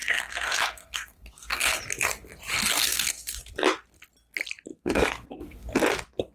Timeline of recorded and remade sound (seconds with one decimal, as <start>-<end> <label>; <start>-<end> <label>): 0.0-1.8 remade; 1.8-2.5 recorded; 2.5-3.4 remade; 3.4-4.7 recorded; 4.7-5.7 remade; 5.7-6.3 recorded